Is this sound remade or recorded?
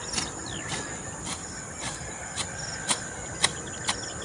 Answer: recorded